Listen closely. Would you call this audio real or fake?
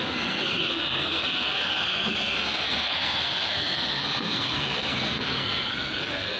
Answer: fake